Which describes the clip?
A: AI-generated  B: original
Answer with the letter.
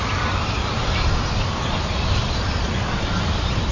A